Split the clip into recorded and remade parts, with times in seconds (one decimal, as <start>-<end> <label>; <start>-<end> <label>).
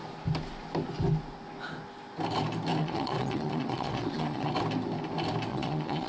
0.0-2.8 recorded; 2.8-4.5 remade; 4.5-5.5 recorded; 5.5-6.1 remade